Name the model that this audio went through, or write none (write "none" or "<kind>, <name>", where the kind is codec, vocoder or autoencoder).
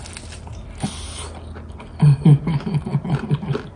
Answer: none